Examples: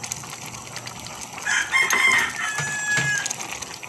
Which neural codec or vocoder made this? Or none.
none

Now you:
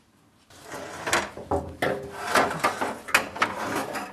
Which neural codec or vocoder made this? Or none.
none